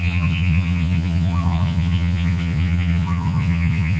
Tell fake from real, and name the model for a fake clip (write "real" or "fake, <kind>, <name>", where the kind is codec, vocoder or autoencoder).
fake, vocoder, Vocos